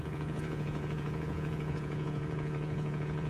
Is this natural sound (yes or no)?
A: no